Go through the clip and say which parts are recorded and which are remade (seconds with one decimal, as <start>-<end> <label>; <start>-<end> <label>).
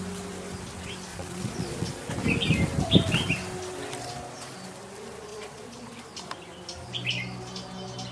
0.0-1.1 recorded; 1.1-2.1 remade; 2.1-5.3 recorded; 5.3-5.9 remade; 5.9-8.1 recorded